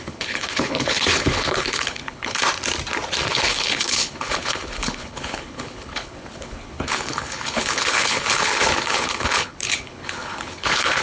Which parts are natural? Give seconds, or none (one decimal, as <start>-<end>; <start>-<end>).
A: 2.4-3.3